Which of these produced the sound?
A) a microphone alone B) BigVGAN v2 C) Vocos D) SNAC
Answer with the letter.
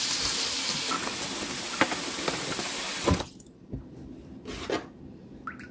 A